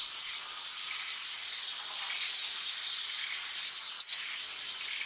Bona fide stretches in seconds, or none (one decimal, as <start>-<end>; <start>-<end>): 0.0-5.1